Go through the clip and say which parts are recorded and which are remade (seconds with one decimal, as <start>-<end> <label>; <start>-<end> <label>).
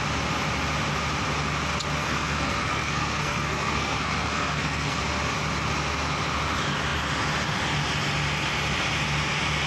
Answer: 0.0-2.0 recorded; 2.0-5.0 remade; 5.0-9.7 recorded